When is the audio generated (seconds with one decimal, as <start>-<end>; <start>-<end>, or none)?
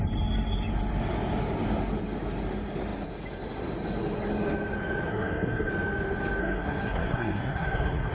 5.1-5.7; 6.4-8.1